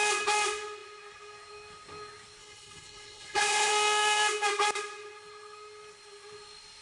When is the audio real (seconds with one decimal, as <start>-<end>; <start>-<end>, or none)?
0.0-2.4; 3.7-6.8